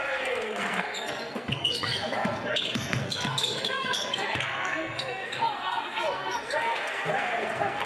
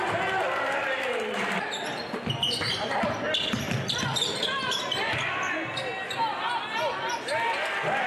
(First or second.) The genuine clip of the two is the second